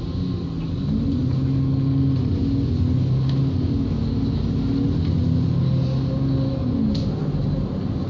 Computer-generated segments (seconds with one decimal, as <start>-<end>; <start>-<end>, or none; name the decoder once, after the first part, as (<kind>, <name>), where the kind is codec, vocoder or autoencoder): none